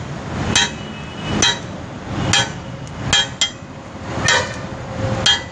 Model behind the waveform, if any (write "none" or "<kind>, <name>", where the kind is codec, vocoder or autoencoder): none